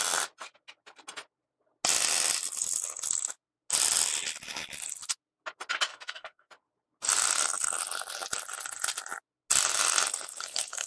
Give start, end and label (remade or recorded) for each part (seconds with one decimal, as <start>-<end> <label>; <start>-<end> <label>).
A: 0.0-5.9 recorded; 5.9-6.5 remade; 6.5-10.3 recorded; 10.3-10.9 remade